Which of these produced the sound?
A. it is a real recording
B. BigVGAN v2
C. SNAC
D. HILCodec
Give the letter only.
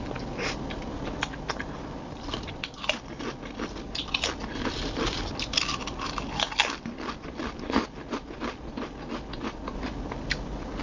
A